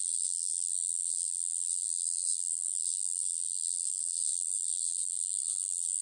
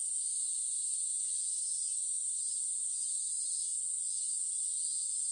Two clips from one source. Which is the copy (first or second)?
first